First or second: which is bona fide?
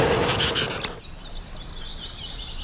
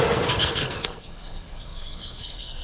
first